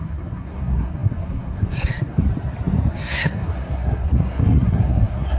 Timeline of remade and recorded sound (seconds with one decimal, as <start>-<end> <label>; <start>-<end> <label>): 0.0-2.2 remade; 2.2-2.9 recorded; 2.9-5.4 remade